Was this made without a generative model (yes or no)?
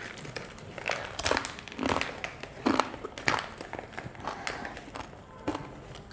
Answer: yes